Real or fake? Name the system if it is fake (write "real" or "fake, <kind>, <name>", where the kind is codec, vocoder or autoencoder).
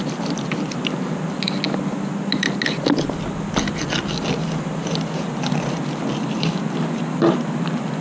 real